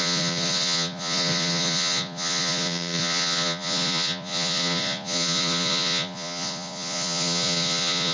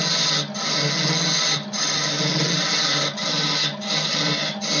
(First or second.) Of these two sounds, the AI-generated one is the first